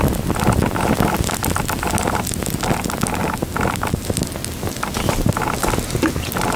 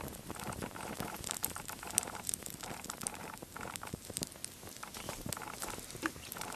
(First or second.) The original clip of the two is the first